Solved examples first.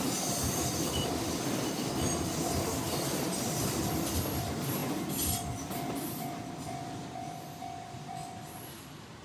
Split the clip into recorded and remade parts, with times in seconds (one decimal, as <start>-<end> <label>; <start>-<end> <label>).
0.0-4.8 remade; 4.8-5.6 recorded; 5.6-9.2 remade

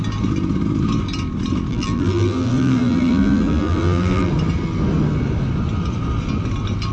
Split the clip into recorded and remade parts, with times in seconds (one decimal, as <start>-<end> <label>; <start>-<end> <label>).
0.0-1.7 recorded; 1.7-4.3 remade; 4.3-6.9 recorded

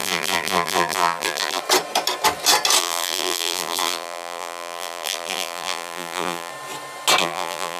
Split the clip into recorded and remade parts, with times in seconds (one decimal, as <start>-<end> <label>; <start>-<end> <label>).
0.0-1.6 remade; 1.6-2.8 recorded; 2.8-6.5 remade; 6.5-7.2 recorded; 7.2-7.8 remade

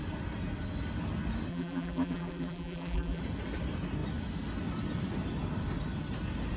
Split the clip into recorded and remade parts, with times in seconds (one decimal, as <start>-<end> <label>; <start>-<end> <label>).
0.0-1.5 recorded; 1.5-3.2 remade; 3.2-6.6 recorded

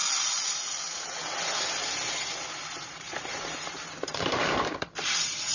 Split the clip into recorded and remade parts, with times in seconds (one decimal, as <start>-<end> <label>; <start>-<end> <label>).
0.0-2.2 recorded; 2.2-5.5 remade

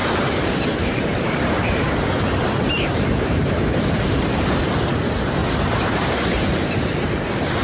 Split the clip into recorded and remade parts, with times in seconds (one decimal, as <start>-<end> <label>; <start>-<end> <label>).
0.0-4.2 remade; 4.2-5.4 recorded; 5.4-6.5 remade; 6.5-7.6 recorded

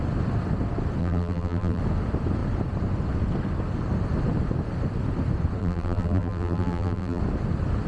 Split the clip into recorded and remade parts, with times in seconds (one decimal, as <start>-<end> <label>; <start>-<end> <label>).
0.0-1.0 recorded; 1.0-1.8 remade; 1.8-5.6 recorded; 5.6-7.2 remade; 7.2-7.9 recorded

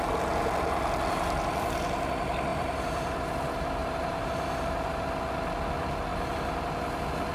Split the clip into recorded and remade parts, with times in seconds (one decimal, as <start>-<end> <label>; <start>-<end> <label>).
0.0-2.5 recorded; 2.5-3.3 remade; 3.3-3.8 recorded; 3.8-5.2 remade; 5.2-7.3 recorded